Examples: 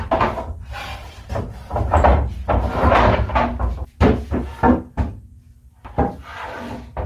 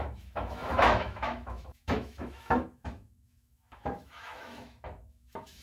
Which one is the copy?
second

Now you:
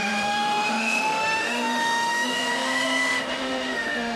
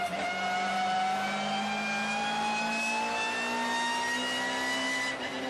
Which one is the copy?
first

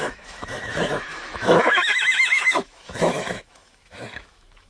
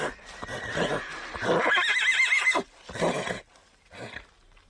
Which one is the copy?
first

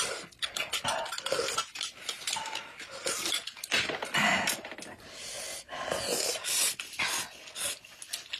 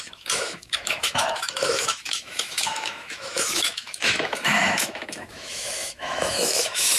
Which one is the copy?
second